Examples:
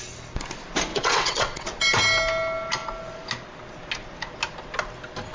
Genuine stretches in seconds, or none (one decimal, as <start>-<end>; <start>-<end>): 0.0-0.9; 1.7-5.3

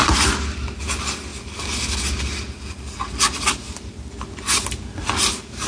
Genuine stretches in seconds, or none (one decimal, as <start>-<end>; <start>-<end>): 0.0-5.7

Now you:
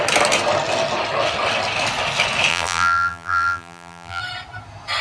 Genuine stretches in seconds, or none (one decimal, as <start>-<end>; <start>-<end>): 0.0-2.5; 4.2-5.0